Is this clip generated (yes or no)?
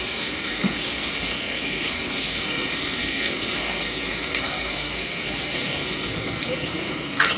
yes